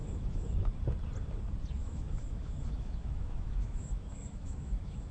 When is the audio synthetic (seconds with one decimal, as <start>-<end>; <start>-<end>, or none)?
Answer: 0.0-0.5; 1.8-5.1